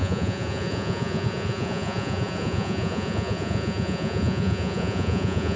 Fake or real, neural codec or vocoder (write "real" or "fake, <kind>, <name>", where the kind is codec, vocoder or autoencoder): fake, vocoder, Vocos